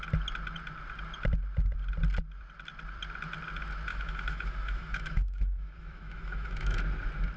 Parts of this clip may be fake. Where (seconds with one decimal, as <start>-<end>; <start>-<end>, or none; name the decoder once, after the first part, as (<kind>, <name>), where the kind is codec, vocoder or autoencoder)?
3.9-6.8 (autoencoder, DAC-VAE)

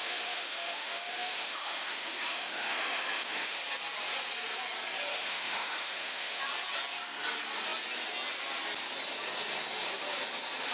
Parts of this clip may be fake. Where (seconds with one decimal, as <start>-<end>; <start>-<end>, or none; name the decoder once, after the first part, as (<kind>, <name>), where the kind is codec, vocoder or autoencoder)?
0.0-3.6 (autoencoder, DAC-VAE); 5.1-6.4

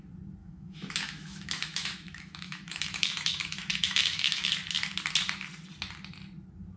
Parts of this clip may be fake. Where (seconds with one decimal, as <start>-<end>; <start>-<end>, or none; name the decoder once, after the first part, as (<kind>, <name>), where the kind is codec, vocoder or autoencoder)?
0.4-4.5 (autoencoder, DAC-VAE)

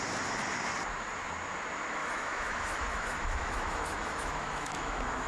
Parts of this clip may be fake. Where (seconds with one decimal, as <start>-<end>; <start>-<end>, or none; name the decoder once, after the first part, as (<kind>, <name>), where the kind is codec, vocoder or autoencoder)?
2.0-5.3 (autoencoder, DAC-VAE)

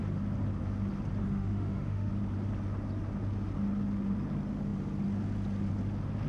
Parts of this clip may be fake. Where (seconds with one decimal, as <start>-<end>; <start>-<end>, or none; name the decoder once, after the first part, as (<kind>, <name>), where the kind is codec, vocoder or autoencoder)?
1.2-2.1 (autoencoder, DAC-VAE)

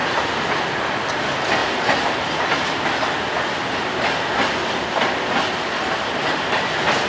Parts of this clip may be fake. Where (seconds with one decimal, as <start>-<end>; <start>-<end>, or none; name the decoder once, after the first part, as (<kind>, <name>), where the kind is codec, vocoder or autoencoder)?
none